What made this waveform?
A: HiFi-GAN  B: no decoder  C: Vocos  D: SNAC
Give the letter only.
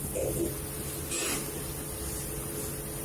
B